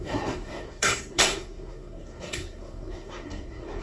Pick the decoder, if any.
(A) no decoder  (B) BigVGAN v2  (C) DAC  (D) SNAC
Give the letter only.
D